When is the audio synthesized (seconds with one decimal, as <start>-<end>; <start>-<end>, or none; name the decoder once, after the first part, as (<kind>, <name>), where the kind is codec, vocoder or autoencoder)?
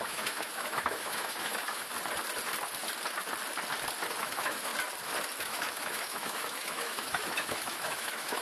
0.0-1.9 (autoencoder, DAC-VAE); 4.2-4.7; 5.4-8.4